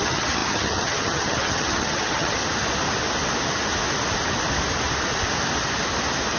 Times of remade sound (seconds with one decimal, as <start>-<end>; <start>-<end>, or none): 0.0-2.4